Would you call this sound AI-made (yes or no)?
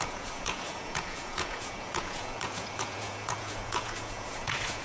yes